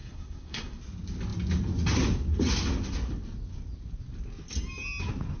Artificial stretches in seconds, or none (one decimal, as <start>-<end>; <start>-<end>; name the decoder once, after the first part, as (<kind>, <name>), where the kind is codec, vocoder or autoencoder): 0.0-0.8 (codec, SNAC)